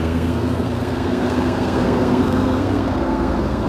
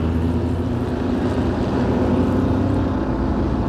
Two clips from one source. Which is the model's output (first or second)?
first